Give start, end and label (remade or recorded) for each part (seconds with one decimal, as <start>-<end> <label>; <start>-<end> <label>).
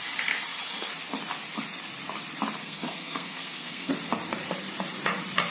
0.0-2.6 recorded; 2.6-3.9 remade; 3.9-5.5 recorded